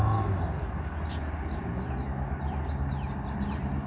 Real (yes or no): yes